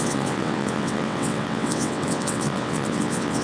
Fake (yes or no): yes